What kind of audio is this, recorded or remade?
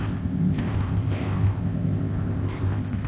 remade